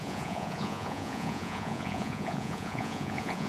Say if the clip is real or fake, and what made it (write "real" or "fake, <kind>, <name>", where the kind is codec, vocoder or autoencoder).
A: fake, vocoder, Vocos